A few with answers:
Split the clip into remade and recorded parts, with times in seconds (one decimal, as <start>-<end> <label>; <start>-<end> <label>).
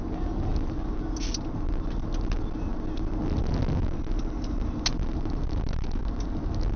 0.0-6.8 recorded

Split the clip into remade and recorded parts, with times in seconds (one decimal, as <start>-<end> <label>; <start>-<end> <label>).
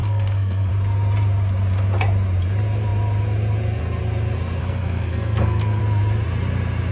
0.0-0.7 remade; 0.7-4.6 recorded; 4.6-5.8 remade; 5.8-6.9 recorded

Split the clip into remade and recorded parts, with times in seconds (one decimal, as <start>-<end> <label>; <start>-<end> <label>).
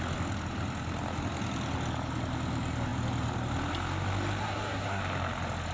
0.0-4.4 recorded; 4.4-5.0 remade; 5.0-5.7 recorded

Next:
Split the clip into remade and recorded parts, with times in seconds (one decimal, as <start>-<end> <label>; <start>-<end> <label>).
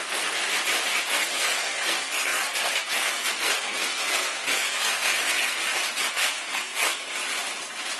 0.0-0.4 remade; 0.4-1.0 recorded; 1.0-5.6 remade; 5.6-6.1 recorded; 6.1-7.2 remade; 7.2-8.0 recorded